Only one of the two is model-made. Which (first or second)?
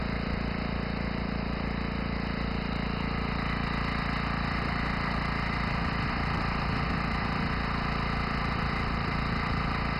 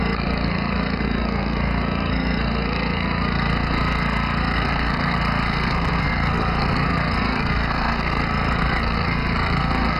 second